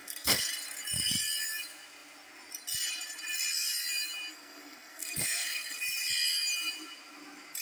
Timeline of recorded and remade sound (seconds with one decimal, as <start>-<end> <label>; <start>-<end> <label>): 0.0-0.5 remade; 0.5-4.3 recorded; 4.3-5.8 remade; 5.8-7.6 recorded